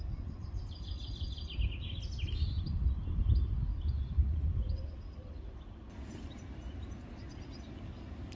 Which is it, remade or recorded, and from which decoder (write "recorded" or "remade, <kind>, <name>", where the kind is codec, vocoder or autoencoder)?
recorded